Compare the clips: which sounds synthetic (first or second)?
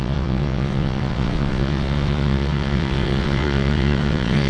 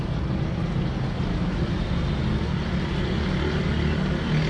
first